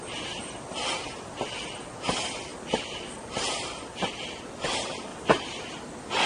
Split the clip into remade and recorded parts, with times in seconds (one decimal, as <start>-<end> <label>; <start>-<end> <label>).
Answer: 0.0-6.3 recorded